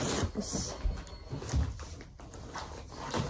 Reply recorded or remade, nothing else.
recorded